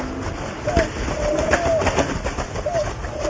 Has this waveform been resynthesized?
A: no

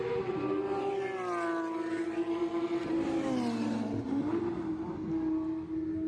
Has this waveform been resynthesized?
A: no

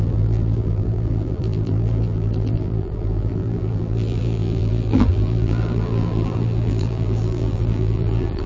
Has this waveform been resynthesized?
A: yes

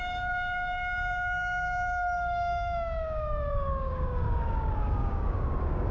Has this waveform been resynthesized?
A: yes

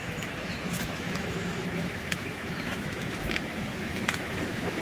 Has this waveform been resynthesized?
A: yes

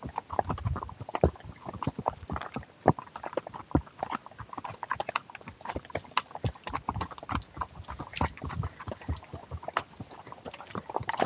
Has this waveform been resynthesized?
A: no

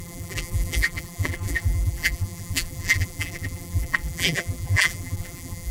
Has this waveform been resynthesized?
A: yes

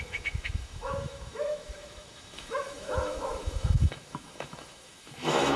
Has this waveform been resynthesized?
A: yes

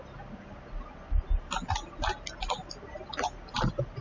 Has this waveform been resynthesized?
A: no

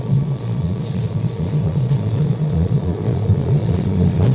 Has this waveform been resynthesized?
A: yes